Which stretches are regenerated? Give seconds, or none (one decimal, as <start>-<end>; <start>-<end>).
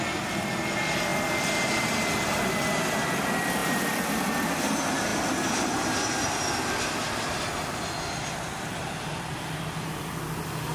3.6-4.6